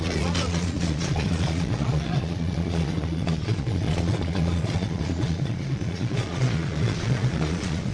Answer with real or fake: fake